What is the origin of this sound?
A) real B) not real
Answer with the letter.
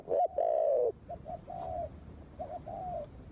A